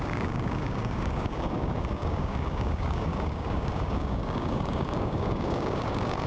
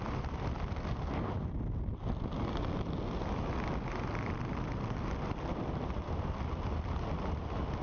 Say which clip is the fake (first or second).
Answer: first